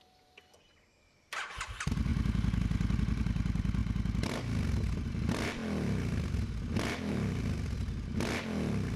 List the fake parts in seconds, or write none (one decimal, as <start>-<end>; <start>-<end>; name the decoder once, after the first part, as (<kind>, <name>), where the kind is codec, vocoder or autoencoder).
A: 0.0-2.1 (vocoder, BigVGAN v2); 2.6-3.8; 5.1-5.6; 7.1-7.8